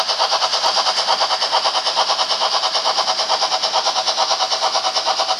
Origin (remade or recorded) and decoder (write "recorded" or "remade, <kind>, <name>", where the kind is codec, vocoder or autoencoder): recorded